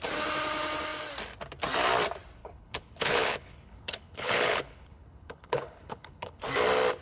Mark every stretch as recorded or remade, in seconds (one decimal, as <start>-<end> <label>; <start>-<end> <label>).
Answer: 0.0-2.4 recorded; 2.4-6.4 remade; 6.4-7.0 recorded